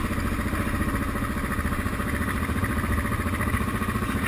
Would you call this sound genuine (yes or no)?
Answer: yes